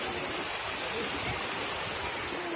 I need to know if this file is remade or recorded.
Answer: recorded